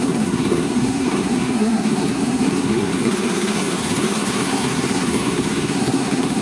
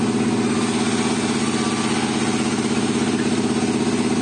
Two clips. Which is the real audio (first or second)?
second